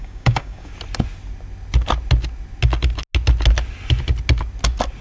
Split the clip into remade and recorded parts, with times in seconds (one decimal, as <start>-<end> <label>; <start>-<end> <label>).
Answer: 0.0-0.7 remade; 0.7-5.0 recorded